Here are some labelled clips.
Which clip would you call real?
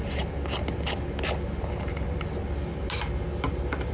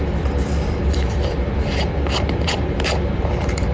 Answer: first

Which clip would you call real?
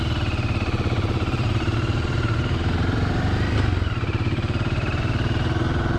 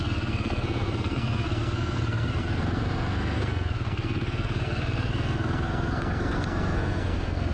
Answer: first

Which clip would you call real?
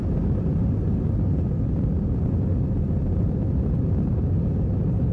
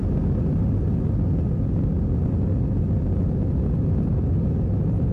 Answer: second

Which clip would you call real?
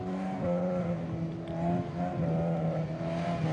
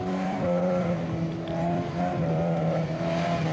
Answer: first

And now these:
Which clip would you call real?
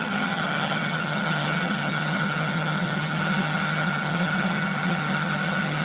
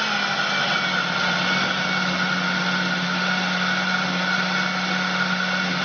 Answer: second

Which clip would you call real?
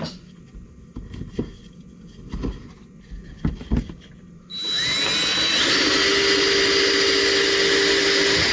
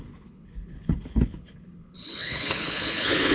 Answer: first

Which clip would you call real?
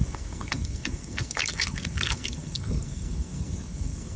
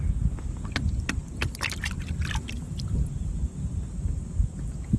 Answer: second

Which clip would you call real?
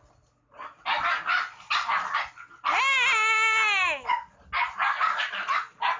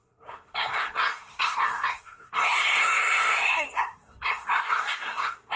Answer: first